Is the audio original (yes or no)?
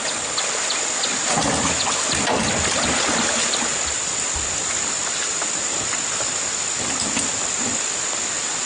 yes